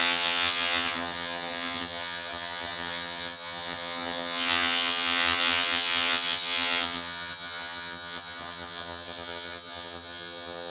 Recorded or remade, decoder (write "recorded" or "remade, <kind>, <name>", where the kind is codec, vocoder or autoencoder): remade, vocoder, HiFi-GAN